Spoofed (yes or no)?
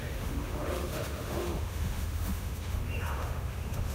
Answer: yes